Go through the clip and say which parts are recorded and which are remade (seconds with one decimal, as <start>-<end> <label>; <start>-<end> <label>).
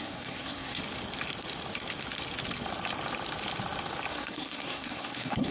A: 0.0-0.8 remade; 0.8-4.1 recorded; 4.1-5.5 remade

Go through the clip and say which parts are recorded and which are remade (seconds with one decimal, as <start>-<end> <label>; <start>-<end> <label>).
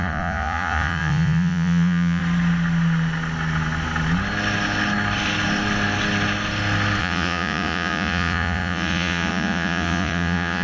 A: 0.0-2.2 remade; 2.2-7.0 recorded; 7.0-10.6 remade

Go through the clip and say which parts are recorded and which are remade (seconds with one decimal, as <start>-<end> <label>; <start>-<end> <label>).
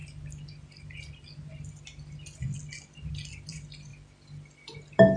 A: 0.0-5.2 recorded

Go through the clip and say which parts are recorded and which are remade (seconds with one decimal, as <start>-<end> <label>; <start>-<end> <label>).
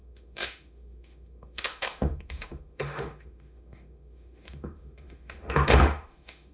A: 0.0-6.5 remade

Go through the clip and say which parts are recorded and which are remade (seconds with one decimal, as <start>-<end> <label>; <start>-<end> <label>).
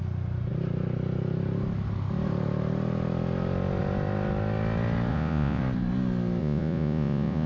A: 0.0-5.1 recorded; 5.1-5.6 remade; 5.6-6.4 recorded; 6.4-7.5 remade